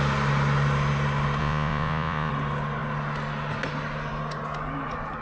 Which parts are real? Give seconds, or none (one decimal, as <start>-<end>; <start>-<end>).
0.0-1.4; 2.3-5.2